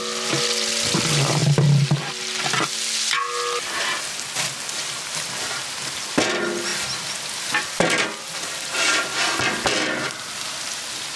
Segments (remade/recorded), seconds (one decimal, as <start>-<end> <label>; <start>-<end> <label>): 0.0-11.2 recorded